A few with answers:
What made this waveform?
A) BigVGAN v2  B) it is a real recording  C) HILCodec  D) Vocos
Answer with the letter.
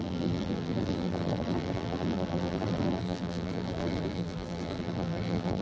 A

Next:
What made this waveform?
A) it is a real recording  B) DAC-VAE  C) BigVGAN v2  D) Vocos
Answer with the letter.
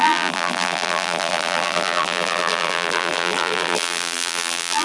C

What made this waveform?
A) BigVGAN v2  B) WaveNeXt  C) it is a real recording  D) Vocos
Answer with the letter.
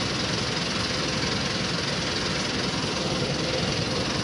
C